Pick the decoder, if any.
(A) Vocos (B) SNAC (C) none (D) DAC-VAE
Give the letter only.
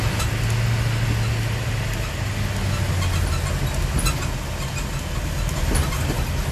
C